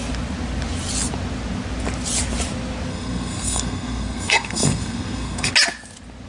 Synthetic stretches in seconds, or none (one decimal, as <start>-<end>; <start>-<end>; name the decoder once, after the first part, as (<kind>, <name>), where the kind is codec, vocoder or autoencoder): 2.9-5.5 (codec, SNAC)